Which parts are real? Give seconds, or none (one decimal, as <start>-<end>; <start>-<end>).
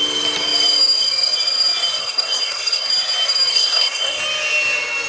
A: 0.0-2.0; 2.9-3.5; 4.2-5.1